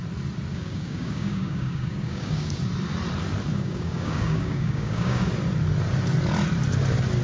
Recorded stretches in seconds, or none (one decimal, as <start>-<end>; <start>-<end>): 0.0-0.5; 2.6-3.5; 5.3-7.2

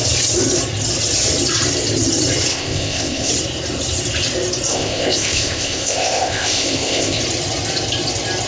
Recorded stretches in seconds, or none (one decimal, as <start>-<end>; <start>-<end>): 0.0-2.5; 3.3-4.7; 7.2-8.5

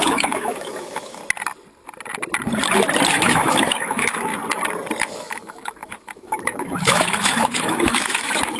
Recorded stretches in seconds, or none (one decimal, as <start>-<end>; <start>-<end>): 1.2-3.1; 4.3-5.0

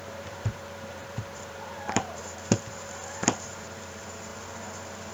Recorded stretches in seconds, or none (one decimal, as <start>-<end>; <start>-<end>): none

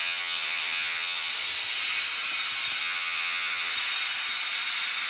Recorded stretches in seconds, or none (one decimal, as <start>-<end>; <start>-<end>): 1.3-2.8; 3.7-5.1